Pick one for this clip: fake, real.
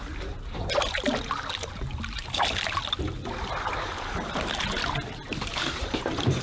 real